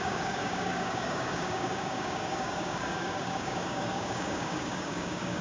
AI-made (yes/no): yes